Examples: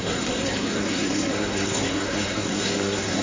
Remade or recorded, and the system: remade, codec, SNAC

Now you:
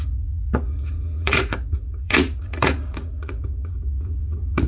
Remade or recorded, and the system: remade, vocoder, Vocos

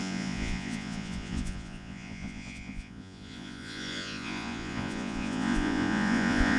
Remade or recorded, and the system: remade, vocoder, Vocos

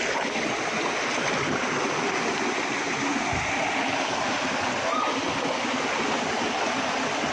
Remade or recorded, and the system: recorded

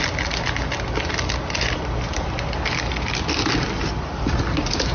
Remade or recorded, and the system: recorded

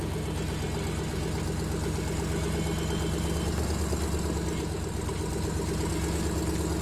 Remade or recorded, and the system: recorded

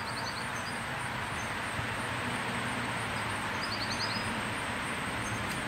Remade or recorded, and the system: recorded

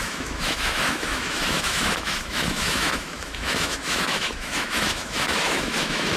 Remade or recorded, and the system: remade, autoencoder, DAC-VAE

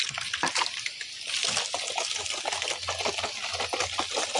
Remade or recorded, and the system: recorded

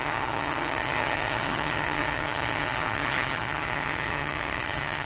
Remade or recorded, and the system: remade, vocoder, HiFi-GAN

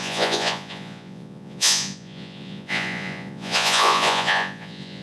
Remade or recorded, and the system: remade, vocoder, Vocos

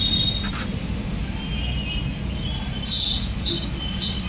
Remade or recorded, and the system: recorded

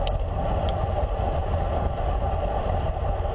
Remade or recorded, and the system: recorded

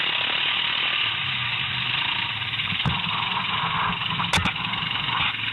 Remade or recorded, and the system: recorded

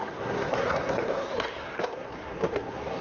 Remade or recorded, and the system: remade, codec, SNAC